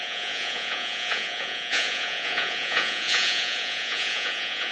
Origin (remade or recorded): remade